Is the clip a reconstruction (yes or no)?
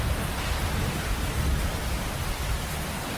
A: no